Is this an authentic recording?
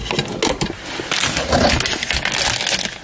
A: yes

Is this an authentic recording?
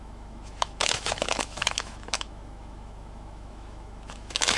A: no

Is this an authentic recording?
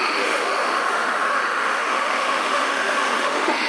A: no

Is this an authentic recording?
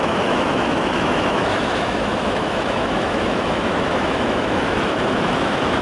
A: no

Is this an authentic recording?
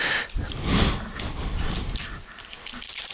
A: yes